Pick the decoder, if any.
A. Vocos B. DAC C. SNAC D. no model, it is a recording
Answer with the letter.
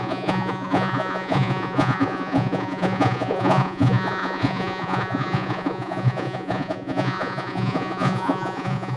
A